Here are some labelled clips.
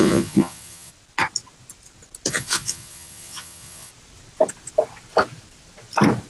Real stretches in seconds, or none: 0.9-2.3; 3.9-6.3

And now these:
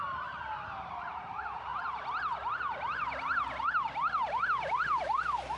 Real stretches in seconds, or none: 0.0-5.6

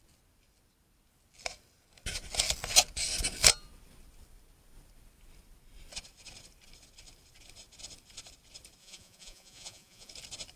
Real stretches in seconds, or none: 0.0-8.8; 10.1-10.6

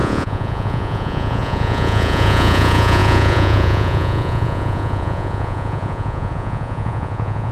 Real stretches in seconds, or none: none

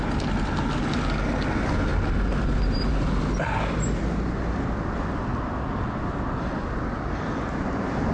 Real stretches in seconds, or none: 0.0-8.1